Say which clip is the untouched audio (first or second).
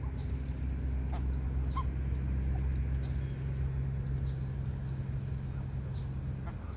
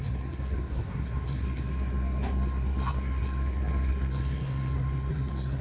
first